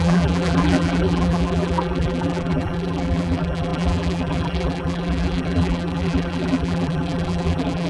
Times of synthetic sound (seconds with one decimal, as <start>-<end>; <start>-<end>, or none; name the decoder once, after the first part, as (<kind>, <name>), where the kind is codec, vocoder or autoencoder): 0.0-7.9 (vocoder, BigVGAN v2)